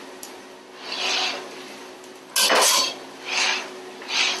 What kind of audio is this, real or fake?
real